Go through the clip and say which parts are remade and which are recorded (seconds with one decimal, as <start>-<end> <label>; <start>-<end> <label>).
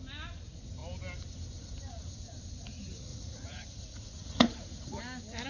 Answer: 0.0-3.1 recorded; 3.1-5.0 remade; 5.0-5.5 recorded